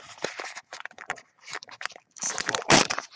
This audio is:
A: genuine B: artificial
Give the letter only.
B